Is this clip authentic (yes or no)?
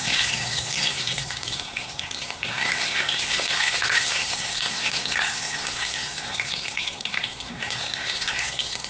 no